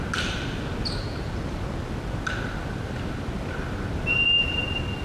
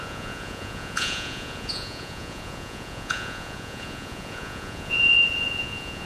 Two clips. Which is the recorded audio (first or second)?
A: first